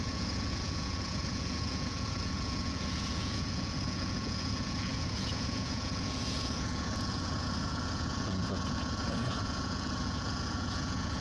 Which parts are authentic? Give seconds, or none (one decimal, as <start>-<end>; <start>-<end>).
none